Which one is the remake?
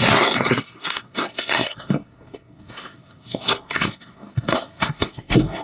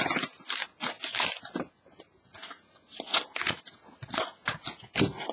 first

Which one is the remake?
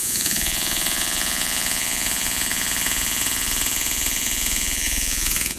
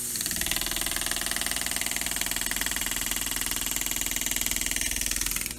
first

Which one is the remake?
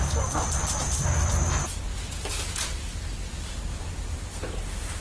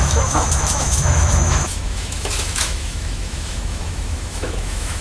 second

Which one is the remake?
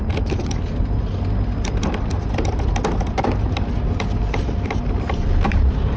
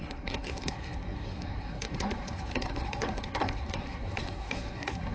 second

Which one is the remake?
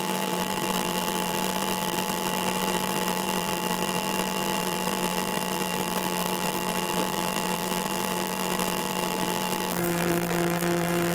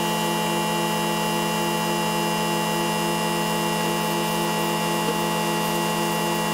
first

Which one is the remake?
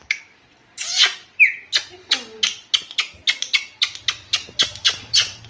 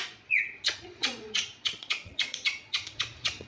second